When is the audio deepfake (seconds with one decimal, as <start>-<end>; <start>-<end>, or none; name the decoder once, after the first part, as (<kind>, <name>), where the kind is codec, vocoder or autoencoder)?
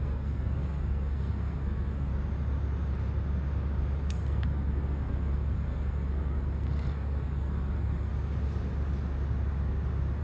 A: 0.0-2.1 (codec, SNAC); 4.1-8.1